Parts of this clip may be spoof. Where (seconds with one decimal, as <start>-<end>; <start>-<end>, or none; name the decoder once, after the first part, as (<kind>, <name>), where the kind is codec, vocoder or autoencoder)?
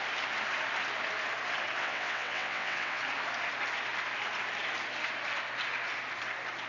1.8-3.0 (vocoder, WaveNeXt)